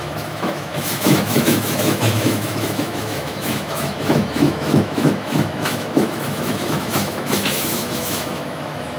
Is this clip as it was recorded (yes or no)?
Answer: no